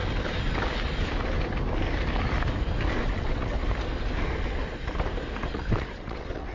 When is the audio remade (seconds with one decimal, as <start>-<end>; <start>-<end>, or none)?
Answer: 3.0-3.6; 5.5-6.5